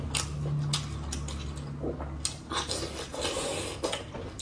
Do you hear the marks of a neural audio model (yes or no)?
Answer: no